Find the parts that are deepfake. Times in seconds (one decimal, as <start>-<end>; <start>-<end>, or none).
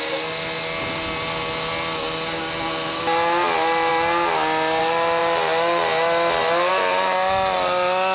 none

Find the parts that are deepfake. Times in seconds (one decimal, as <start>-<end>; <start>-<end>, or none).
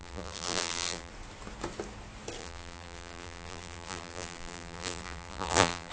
0.0-1.1; 2.4-5.9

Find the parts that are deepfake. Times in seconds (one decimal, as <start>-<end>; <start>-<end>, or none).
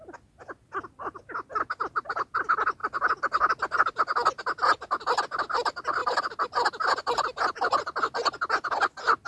none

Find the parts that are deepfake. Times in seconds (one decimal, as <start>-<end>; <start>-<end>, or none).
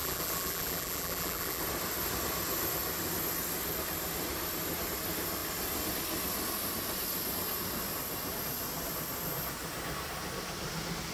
0.0-1.6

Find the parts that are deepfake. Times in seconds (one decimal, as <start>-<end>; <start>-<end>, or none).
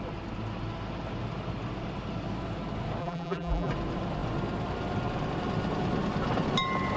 3.0-3.7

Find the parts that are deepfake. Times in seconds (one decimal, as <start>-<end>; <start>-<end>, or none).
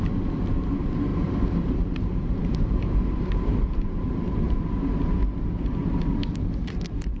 1.1-4.6